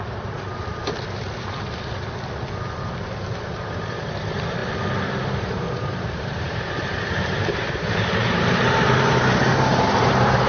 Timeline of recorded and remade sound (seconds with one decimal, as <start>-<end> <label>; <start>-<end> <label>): 0.0-0.8 remade; 0.8-3.3 recorded; 3.3-4.6 remade; 4.6-5.4 recorded; 5.4-10.5 remade

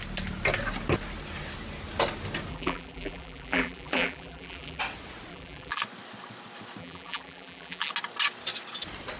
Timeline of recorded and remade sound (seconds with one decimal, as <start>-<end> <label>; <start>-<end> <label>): 0.0-2.5 recorded; 2.5-4.8 remade; 4.8-5.3 recorded; 5.3-5.8 remade; 5.8-6.8 recorded; 6.8-7.9 remade; 7.9-9.2 recorded

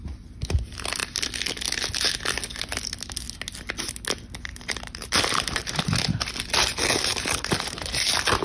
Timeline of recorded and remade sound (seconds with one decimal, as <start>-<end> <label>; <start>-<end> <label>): 0.0-4.5 recorded; 4.5-5.8 remade; 5.8-7.1 recorded; 7.1-7.9 remade; 7.9-8.4 recorded

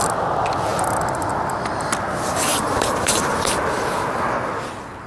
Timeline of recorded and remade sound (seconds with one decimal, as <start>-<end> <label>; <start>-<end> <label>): 0.0-2.5 recorded; 2.5-3.6 remade; 3.6-5.1 recorded

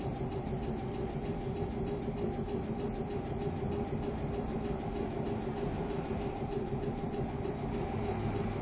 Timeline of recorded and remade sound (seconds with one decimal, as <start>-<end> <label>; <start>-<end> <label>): 0.0-5.7 recorded; 5.7-7.5 remade; 7.5-8.6 recorded

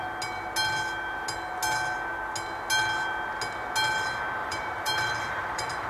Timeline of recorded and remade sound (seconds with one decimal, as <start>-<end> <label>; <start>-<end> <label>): 0.0-4.4 recorded; 4.4-5.9 remade